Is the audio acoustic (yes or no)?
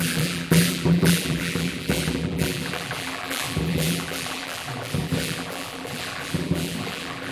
no